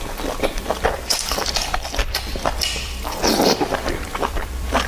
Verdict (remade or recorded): remade